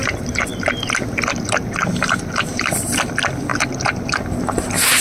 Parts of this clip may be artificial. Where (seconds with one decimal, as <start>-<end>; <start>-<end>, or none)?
0.0-3.5